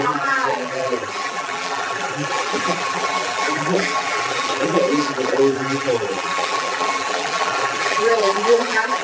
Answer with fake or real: fake